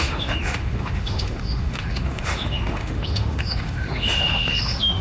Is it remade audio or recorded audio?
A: remade